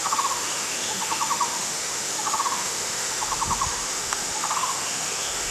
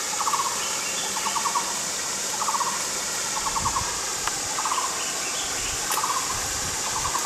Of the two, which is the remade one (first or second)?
first